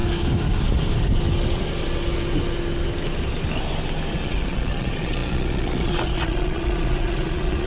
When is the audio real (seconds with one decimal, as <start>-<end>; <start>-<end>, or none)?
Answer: 0.0-4.1